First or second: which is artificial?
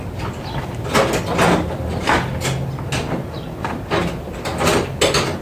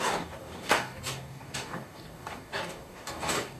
second